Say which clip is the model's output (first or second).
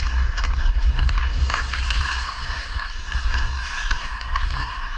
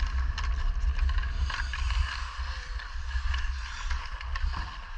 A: first